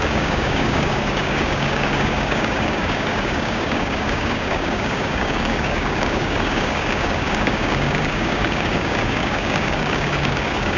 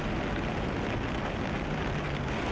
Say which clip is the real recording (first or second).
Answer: second